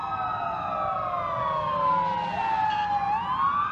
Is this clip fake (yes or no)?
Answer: no